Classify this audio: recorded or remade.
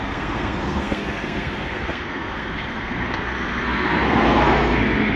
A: remade